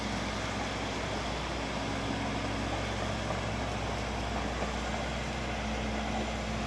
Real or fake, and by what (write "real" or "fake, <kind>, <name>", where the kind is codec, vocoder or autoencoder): real